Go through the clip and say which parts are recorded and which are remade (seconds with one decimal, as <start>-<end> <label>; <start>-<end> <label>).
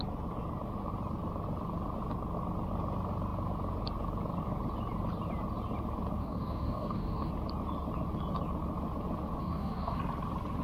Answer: 0.0-6.2 recorded; 6.2-7.3 remade; 7.3-9.4 recorded; 9.4-10.0 remade; 10.0-10.6 recorded